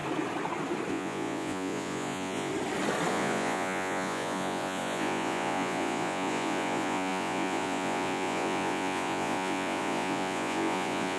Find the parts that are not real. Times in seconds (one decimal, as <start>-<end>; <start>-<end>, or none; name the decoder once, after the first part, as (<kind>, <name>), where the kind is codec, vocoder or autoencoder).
0.9-2.5 (vocoder, Vocos); 3.1-11.2